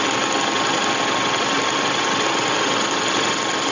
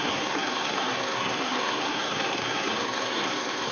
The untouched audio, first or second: first